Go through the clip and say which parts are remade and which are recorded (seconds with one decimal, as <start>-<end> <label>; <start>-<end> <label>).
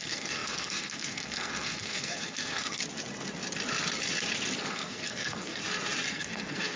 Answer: 0.0-2.8 remade; 2.8-4.6 recorded; 4.6-5.6 remade; 5.6-6.1 recorded; 6.1-6.8 remade